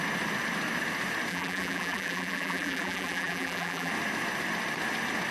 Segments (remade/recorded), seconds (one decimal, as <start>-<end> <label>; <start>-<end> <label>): 0.0-1.3 recorded; 1.3-3.9 remade; 3.9-5.3 recorded